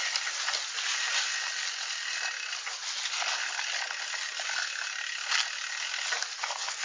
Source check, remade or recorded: recorded